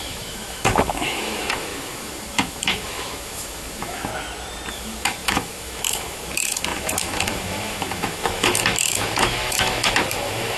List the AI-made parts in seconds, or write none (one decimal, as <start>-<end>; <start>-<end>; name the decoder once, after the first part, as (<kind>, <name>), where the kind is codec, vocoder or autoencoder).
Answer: 0.0-4.1 (autoencoder, DAC-VAE); 4.7-10.6